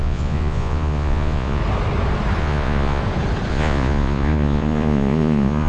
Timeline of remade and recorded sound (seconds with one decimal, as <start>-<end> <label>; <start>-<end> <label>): 0.0-1.6 remade; 1.6-2.4 recorded; 2.4-3.0 remade; 3.0-3.5 recorded; 3.5-5.7 remade